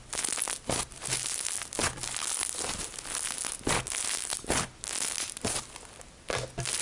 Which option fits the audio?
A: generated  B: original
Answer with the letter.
B